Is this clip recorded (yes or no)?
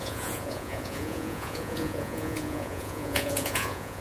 no